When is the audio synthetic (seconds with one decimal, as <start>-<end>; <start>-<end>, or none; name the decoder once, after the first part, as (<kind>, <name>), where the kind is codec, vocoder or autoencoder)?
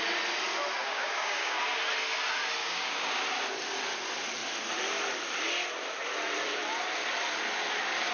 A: 0.8-1.6 (codec, DAC); 2.6-3.2